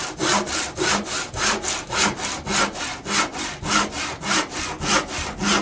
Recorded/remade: recorded